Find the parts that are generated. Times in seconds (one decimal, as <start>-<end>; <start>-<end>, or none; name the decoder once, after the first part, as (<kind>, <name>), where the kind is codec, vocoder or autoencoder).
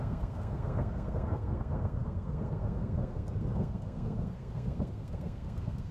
0.0-5.9 (codec, SNAC)